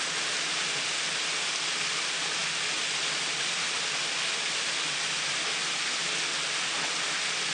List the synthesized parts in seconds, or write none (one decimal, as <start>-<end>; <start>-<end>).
none